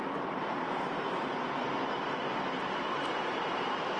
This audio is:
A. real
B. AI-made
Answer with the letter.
A